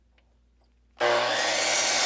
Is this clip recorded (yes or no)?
yes